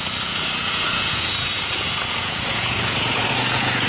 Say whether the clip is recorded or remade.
remade